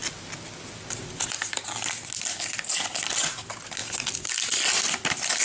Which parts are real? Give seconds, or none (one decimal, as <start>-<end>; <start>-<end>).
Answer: 0.0-5.4